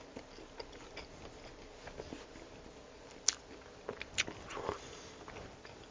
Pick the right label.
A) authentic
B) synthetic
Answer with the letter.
A